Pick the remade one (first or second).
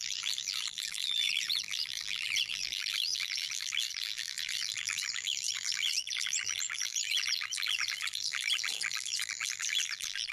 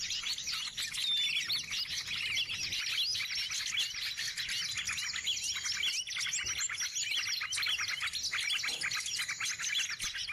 first